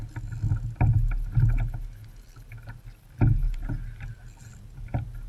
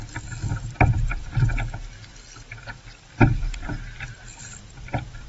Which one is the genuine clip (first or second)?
first